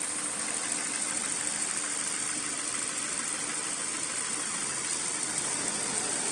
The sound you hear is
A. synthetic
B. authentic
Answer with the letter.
B